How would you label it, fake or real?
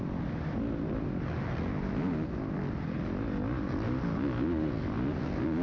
real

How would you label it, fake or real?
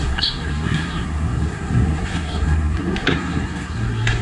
fake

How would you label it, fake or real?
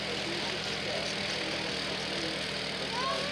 real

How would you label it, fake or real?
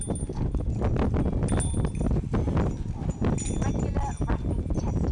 real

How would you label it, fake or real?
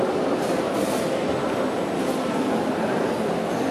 real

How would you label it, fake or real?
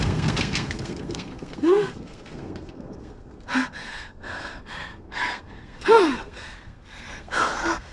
fake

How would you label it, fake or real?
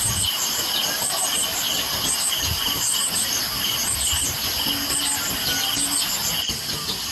real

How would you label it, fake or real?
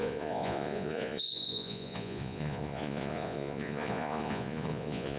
fake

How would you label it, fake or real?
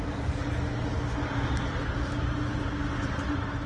real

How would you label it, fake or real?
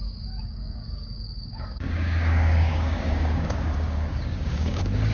fake